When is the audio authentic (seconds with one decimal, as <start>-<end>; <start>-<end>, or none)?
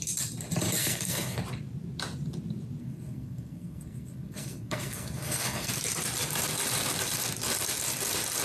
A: 0.0-0.8; 1.4-2.8; 5.7-8.4